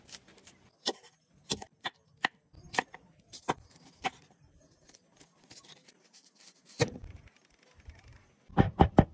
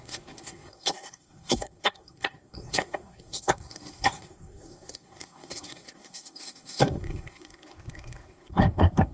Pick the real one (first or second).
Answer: first